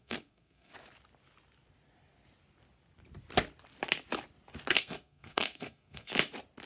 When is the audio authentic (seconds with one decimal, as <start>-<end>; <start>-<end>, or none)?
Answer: 0.7-4.7; 6.1-6.7